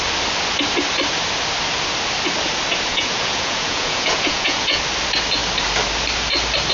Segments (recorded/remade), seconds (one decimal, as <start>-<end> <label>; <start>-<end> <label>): 0.0-2.9 recorded; 2.9-4.8 remade; 4.8-6.7 recorded